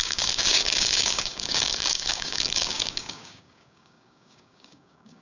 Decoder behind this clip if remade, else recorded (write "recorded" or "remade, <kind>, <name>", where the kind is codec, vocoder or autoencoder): remade, codec, DAC